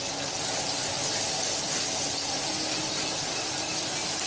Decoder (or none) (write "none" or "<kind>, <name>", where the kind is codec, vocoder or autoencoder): none